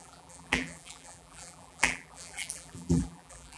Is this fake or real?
fake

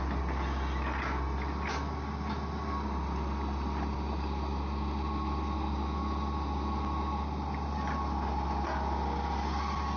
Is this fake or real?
real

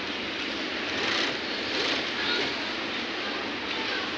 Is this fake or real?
real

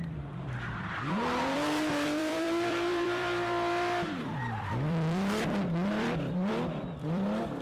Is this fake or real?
fake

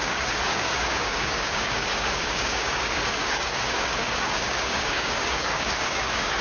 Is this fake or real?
fake